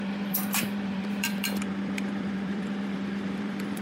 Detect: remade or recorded remade